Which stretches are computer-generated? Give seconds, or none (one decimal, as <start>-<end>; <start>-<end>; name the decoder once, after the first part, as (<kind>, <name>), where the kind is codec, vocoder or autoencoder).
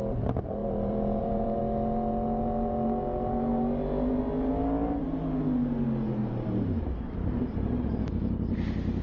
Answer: 0.6-1.6 (vocoder, BigVGAN v2); 6.2-6.8